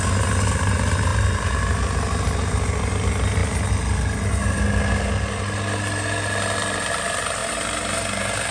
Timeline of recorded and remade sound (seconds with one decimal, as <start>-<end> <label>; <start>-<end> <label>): 0.0-8.5 recorded